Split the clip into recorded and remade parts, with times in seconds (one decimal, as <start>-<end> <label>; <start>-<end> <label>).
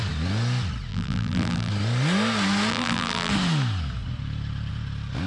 0.0-0.9 recorded; 0.9-1.7 remade; 1.7-2.7 recorded; 2.7-3.3 remade; 3.3-5.3 recorded